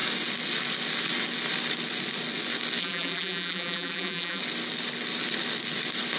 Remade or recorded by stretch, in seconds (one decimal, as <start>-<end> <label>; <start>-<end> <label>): 0.0-2.8 recorded; 2.8-4.4 remade; 4.4-6.2 recorded